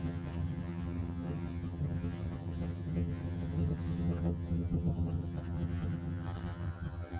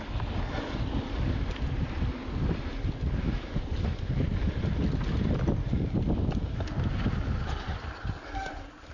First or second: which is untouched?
second